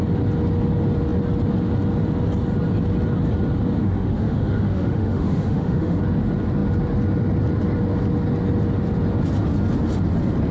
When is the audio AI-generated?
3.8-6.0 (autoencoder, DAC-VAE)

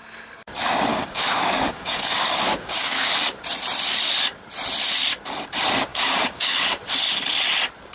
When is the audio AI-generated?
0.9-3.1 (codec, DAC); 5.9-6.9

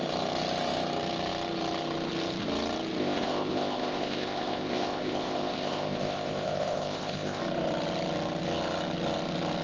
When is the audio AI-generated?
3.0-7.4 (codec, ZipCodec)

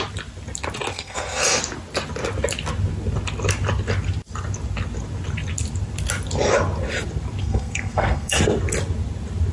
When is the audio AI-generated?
0.9-1.6 (codec, SNAC); 7.4-8.4

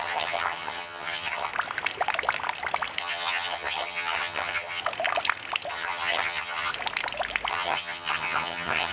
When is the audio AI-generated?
0.0-1.5 (vocoder, HiFi-GAN); 3.0-4.8; 5.7-6.7; 7.5-8.9

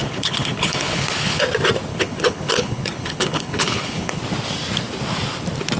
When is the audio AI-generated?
0.0-1.4 (codec, HILCodec); 1.9-4.2